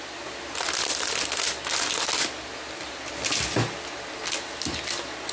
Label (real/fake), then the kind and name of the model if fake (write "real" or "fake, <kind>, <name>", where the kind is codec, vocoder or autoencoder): real